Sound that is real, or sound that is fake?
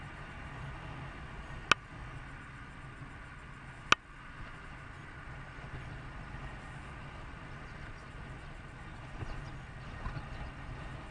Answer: real